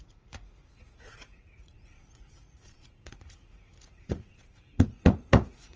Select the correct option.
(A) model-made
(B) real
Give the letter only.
A